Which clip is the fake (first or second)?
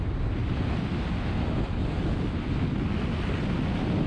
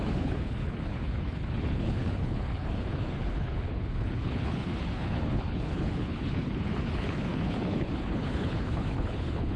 second